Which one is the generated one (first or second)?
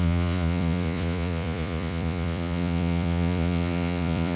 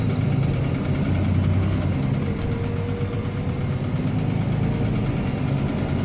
first